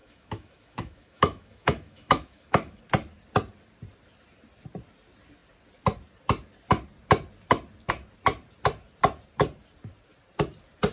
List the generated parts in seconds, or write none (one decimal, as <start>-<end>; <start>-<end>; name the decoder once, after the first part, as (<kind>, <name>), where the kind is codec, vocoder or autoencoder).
0.0-2.8 (autoencoder, DAC-VAE)